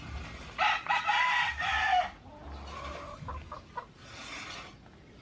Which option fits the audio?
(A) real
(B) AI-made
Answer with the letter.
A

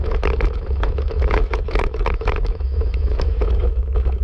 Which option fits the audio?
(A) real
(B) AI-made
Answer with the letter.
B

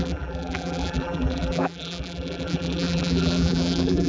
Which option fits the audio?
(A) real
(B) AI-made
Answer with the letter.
B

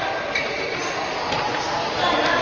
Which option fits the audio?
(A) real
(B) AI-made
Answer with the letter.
A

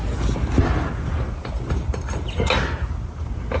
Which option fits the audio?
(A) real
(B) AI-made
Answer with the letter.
A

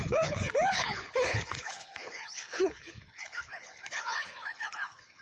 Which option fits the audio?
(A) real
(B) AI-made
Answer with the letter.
B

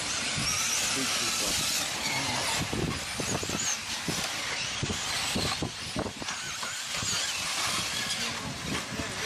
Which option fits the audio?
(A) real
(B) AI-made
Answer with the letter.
A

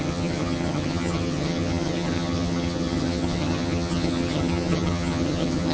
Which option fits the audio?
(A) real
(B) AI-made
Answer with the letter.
B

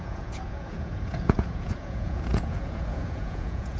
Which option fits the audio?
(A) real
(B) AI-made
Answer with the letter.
B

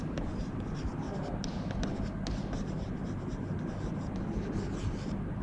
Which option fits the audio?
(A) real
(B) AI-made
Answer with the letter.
A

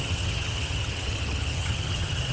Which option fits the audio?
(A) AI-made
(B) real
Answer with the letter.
A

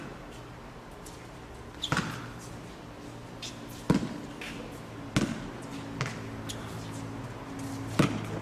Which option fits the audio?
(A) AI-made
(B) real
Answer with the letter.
B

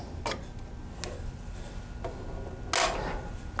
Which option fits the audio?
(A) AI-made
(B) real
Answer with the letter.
B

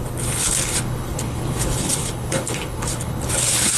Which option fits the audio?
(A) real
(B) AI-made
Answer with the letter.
B